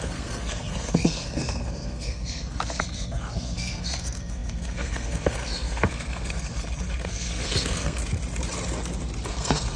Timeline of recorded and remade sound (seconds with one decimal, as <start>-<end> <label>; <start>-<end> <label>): 0.0-8.0 remade; 8.0-9.3 recorded; 9.3-9.8 remade